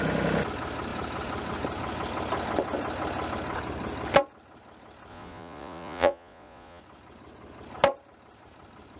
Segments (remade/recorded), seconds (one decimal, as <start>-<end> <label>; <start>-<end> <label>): 0.0-5.1 recorded; 5.1-6.8 remade; 6.8-9.0 recorded